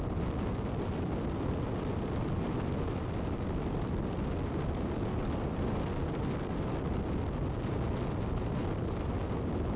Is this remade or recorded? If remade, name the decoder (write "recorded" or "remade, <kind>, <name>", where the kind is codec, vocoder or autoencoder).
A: recorded